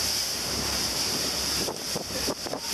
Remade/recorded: remade